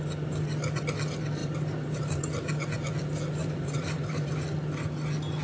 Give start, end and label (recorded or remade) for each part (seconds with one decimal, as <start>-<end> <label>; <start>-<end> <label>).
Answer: 0.0-1.4 recorded; 1.4-2.2 remade; 2.2-3.4 recorded; 3.4-4.3 remade; 4.3-5.4 recorded